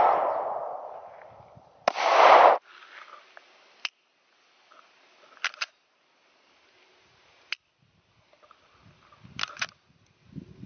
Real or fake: real